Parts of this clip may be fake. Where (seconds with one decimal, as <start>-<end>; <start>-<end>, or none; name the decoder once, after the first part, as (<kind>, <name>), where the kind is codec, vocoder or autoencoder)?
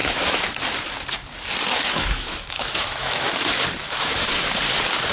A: 0.0-0.6 (autoencoder, DAC-VAE); 1.7-3.3; 3.8-4.4